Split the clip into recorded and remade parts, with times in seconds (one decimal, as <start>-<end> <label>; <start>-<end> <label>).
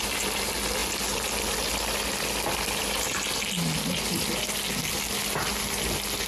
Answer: 0.0-6.3 recorded